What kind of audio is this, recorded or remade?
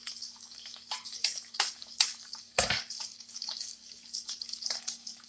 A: remade